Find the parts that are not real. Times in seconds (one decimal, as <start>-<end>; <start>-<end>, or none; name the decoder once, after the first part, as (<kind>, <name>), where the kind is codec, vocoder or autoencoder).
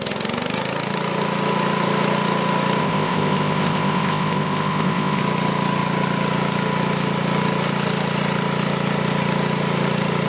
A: 2.8-5.2 (codec, ZipCodec)